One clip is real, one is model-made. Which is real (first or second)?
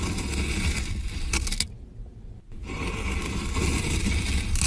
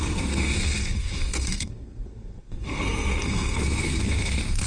first